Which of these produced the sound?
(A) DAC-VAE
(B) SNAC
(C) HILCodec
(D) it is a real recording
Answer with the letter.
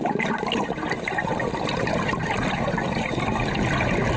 D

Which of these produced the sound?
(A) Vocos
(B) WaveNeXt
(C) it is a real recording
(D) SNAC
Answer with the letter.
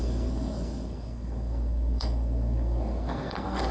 D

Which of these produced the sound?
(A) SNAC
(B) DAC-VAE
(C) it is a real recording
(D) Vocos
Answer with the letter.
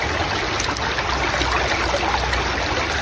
C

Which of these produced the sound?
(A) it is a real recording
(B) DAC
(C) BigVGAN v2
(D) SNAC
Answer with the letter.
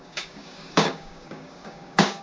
B